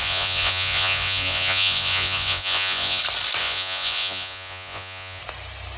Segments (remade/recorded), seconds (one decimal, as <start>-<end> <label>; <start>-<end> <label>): 0.0-3.0 remade; 3.0-3.4 recorded; 3.4-5.2 remade; 5.2-5.8 recorded